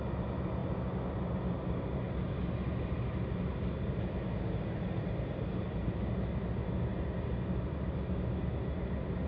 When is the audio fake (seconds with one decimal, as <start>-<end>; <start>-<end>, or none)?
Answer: none

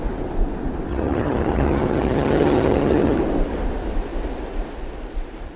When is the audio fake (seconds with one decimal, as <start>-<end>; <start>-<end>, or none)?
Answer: 0.9-3.2

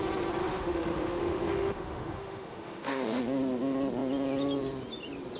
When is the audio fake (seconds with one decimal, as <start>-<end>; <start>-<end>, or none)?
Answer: 0.4-3.2

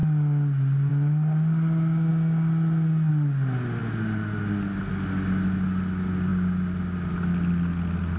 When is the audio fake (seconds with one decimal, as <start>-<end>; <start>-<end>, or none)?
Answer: none

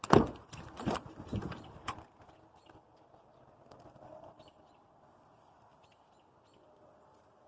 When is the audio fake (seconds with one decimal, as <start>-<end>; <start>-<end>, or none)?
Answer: 1.3-2.3

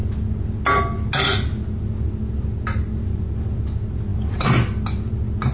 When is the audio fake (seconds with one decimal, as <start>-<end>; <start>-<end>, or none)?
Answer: none